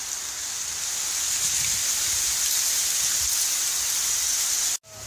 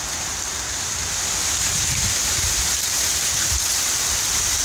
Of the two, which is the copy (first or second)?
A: second